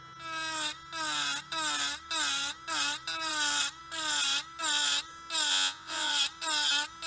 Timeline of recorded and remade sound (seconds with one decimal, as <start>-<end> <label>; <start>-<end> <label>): 0.0-5.5 recorded; 5.5-6.1 remade; 6.1-7.1 recorded